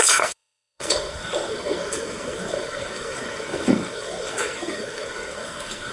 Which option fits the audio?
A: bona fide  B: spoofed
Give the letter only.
B